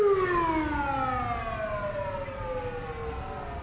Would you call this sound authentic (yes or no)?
yes